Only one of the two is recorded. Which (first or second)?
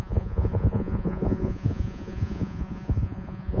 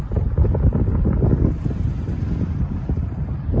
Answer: second